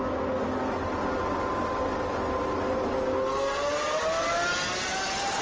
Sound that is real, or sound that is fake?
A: real